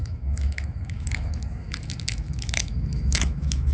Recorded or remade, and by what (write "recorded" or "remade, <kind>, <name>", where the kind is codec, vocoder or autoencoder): remade, autoencoder, DAC-VAE